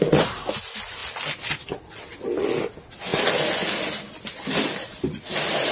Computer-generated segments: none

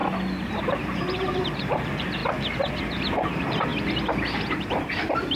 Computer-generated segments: 0.6-2.2 (vocoder, BigVGAN v2); 2.8-3.7; 4.7-5.4